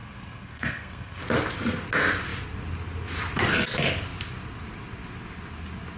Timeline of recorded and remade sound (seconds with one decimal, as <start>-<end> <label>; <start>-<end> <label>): 0.0-1.2 remade; 1.2-6.0 recorded